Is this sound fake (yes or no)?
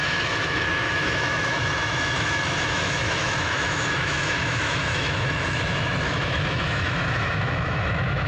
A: yes